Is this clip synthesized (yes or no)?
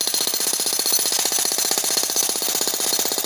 yes